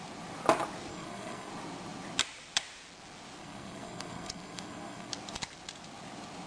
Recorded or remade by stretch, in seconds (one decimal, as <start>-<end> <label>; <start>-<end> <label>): 0.0-0.9 recorded; 0.9-1.5 remade; 1.5-3.4 recorded; 3.4-5.1 remade; 5.1-6.5 recorded